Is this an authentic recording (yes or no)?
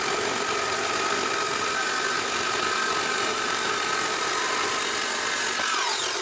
yes